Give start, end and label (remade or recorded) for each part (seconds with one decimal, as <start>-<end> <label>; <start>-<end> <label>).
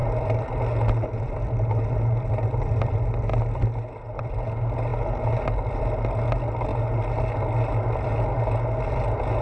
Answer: 0.0-9.4 recorded